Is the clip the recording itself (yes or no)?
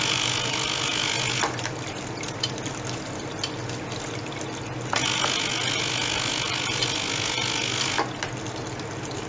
yes